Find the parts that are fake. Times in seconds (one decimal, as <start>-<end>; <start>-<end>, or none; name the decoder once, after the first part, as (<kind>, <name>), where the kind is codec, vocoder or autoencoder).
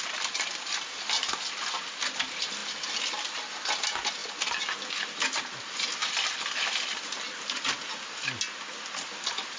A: none